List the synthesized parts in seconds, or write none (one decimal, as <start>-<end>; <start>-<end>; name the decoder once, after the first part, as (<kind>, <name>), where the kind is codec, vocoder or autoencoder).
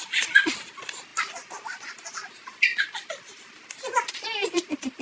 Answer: none